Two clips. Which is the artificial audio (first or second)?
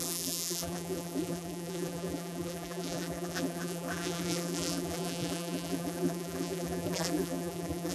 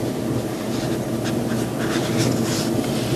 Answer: first